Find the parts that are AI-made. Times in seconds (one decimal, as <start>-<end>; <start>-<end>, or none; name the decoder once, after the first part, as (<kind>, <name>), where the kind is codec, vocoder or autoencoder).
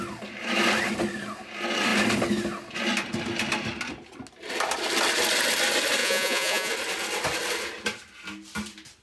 6.0-6.7 (vocoder, Vocos)